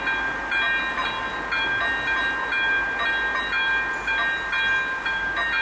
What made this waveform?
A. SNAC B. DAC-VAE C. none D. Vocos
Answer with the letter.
C